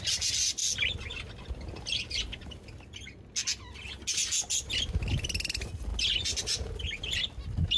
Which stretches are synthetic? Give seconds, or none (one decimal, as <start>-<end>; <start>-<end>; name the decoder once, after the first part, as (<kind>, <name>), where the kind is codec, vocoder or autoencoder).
none